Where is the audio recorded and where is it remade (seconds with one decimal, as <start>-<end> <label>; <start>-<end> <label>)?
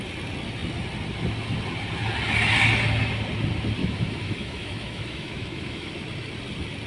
0.0-3.8 recorded; 3.8-5.9 remade; 5.9-6.9 recorded